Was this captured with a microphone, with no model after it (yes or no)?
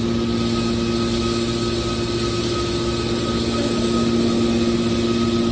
yes